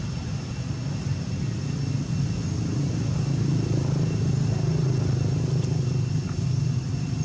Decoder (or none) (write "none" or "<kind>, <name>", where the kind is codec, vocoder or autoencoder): none